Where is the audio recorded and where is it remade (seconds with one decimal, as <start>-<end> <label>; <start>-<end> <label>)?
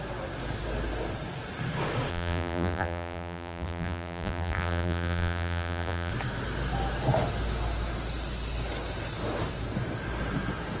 0.0-2.1 recorded; 2.1-6.1 remade; 6.1-10.8 recorded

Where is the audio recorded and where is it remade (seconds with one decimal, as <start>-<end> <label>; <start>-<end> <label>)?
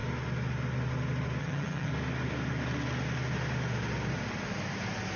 0.0-1.4 recorded; 1.4-1.9 remade; 1.9-5.2 recorded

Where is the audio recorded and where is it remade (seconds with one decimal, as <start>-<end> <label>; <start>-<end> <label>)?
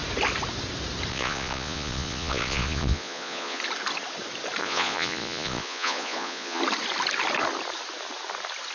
0.0-1.1 recorded; 1.1-3.6 remade; 3.6-4.6 recorded; 4.6-6.6 remade; 6.6-8.7 recorded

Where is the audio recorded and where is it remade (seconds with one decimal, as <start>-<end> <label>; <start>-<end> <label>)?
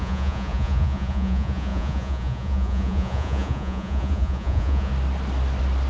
0.0-4.9 remade; 4.9-5.9 recorded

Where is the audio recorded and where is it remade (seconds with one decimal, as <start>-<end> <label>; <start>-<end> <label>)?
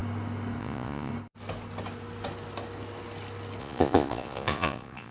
0.0-0.6 recorded; 0.6-1.1 remade; 1.1-3.6 recorded; 3.6-5.1 remade